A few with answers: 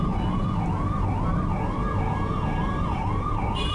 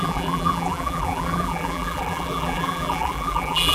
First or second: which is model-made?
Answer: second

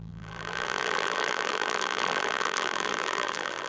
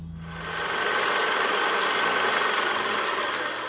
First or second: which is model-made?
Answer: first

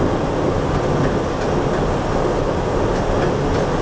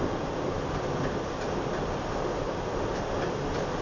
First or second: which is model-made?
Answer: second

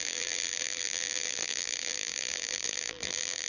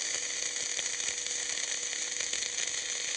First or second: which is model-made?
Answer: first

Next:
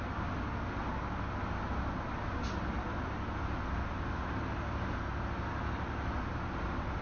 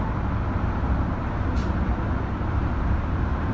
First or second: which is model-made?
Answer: second